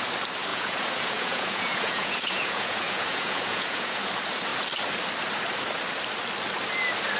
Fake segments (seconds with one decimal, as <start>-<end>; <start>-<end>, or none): 0.5-4.0